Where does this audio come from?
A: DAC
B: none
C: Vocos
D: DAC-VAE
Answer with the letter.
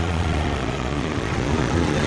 C